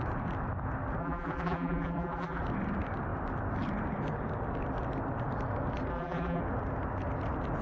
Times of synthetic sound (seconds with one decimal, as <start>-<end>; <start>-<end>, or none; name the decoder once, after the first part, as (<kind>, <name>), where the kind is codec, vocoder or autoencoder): 1.0-2.4 (vocoder, BigVGAN v2); 5.9-6.4